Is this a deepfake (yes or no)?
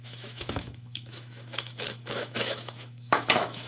yes